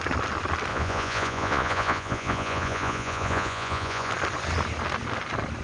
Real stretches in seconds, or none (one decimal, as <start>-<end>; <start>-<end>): 0.0-0.7; 4.1-5.6